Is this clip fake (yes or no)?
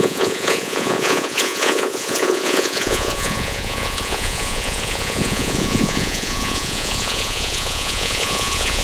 yes